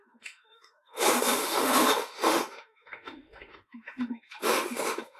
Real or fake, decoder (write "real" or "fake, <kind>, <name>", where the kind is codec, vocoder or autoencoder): fake, autoencoder, DAC-VAE